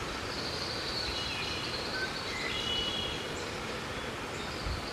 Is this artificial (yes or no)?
no